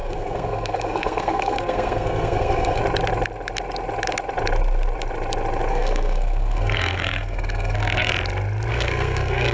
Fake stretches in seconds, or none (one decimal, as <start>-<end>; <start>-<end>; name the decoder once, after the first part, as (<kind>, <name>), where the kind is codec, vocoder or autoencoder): 0.0-2.8 (codec, SNAC); 5.7-8.1; 8.7-9.5